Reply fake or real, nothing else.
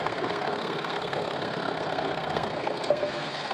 fake